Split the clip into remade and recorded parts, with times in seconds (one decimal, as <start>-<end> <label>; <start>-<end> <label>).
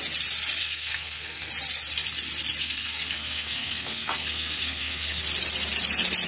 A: 0.0-0.6 recorded; 0.6-1.5 remade; 1.5-2.6 recorded; 2.6-5.2 remade; 5.2-6.3 recorded